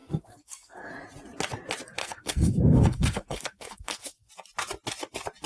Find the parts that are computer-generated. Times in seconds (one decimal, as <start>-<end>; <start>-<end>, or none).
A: 0.0-0.9; 2.0-4.3